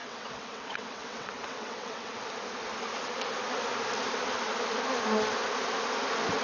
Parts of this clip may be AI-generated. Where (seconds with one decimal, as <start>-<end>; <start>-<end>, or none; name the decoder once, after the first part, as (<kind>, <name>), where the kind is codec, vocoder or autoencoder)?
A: 0.0-2.2 (vocoder, WaveNeXt)